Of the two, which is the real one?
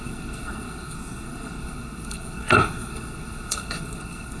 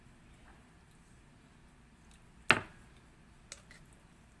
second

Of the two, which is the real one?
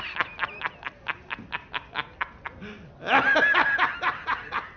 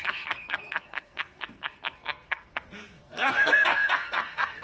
first